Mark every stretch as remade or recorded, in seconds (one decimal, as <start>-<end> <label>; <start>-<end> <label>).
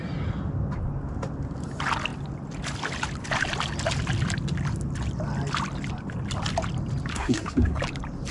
0.0-7.1 recorded; 7.1-7.8 remade; 7.8-8.3 recorded